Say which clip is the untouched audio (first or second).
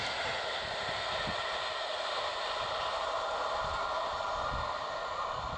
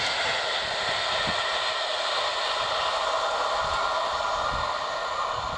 second